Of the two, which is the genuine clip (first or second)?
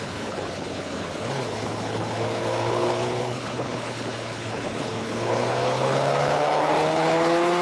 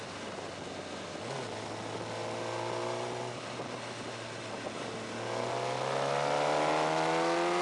second